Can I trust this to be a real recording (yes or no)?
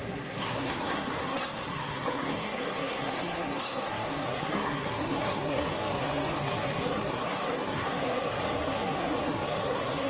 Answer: no